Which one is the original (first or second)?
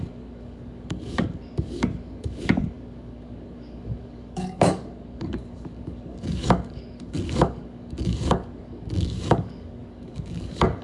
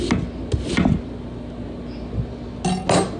second